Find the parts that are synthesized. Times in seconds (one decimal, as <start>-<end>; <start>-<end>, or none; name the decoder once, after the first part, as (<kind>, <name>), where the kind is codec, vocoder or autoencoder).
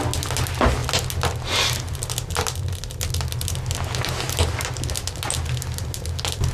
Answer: none